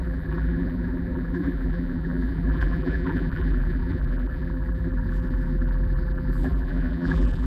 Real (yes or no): no